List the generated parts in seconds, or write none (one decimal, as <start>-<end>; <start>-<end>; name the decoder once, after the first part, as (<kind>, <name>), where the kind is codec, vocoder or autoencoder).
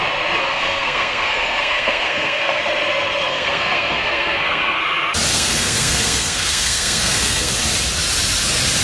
0.4-2.6 (codec, SNAC); 3.3-4.8; 5.3-7.5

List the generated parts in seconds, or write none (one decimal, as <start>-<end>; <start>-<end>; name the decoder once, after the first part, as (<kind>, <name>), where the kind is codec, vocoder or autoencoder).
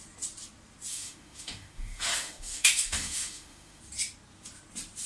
0.9-3.8 (autoencoder, DAC-VAE)